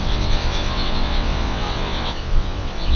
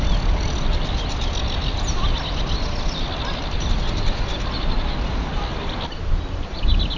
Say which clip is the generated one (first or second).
first